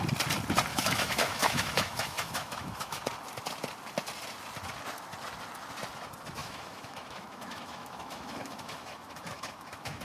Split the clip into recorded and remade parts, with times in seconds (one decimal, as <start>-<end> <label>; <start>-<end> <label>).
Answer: 0.0-0.7 recorded; 0.7-3.0 remade; 3.0-6.4 recorded; 6.4-10.0 remade

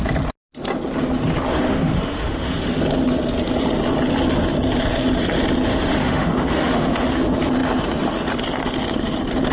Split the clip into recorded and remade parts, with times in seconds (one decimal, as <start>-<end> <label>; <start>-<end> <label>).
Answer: 0.0-1.5 recorded; 1.5-2.8 remade; 2.8-5.7 recorded; 5.7-7.1 remade; 7.1-9.5 recorded